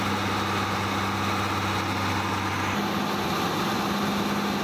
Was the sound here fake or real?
real